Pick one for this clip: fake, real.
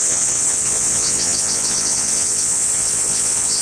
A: fake